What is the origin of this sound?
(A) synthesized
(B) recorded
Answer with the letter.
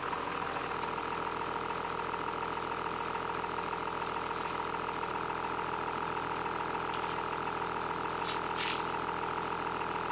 B